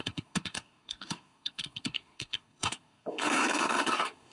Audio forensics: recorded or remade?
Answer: remade